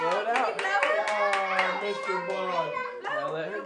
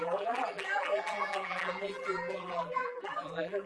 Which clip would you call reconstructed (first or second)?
second